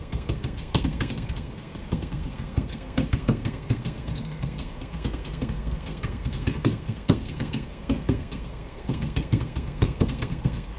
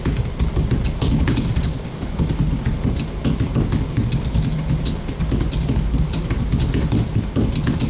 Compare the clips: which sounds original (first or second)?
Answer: second